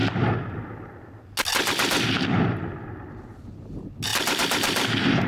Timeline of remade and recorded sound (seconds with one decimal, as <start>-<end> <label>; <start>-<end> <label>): 0.0-5.3 recorded